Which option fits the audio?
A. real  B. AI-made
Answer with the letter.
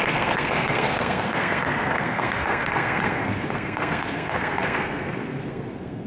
B